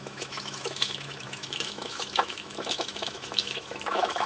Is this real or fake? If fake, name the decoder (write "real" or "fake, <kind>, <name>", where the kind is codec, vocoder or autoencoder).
fake, autoencoder, DAC-VAE